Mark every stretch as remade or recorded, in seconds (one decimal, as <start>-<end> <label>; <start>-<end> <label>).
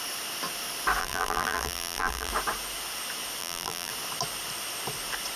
0.0-1.0 recorded; 1.0-2.3 remade; 2.3-3.4 recorded; 3.4-3.9 remade; 3.9-5.4 recorded